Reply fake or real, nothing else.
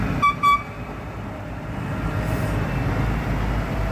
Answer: real